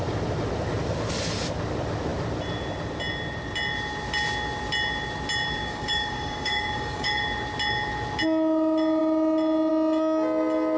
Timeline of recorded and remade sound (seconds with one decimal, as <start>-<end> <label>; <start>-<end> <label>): 0.0-5.6 recorded; 5.6-7.2 remade; 7.2-10.8 recorded